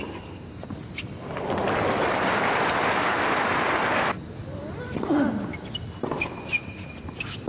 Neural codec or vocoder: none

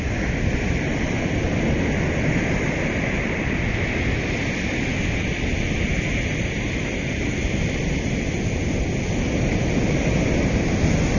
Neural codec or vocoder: none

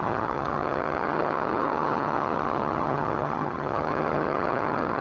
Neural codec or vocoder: vocoder, HiFi-GAN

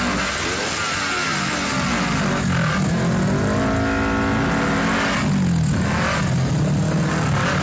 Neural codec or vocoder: none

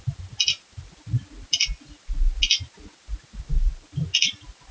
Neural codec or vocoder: none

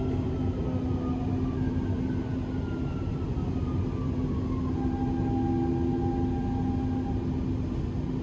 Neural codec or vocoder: none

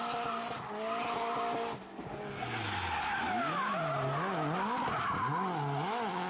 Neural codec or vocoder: none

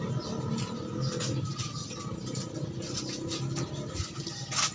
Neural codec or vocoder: none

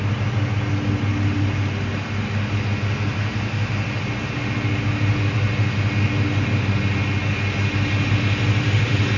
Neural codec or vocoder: none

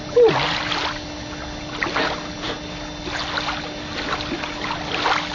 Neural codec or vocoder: none